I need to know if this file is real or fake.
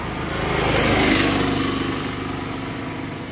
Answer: real